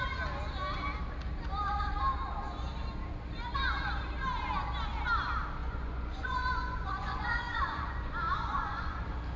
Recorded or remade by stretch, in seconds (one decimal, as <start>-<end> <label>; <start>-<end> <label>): 0.0-5.6 recorded; 5.6-9.0 remade; 9.0-9.4 recorded